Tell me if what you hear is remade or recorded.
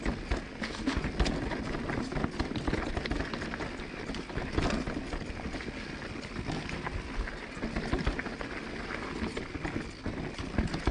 recorded